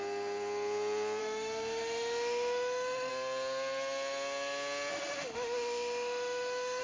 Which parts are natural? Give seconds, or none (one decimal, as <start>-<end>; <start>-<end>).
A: 0.0-1.2; 3.1-4.9